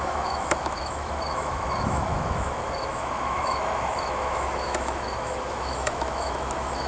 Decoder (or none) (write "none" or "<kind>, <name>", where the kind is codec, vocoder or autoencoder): autoencoder, DAC-VAE